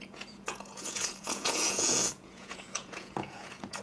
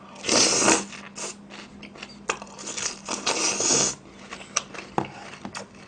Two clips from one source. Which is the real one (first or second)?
second